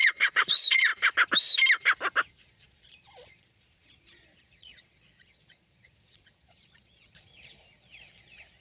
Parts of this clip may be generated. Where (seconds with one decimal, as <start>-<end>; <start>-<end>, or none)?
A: 0.0-0.9; 2.3-8.6